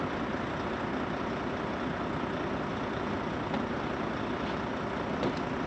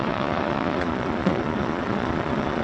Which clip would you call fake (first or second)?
second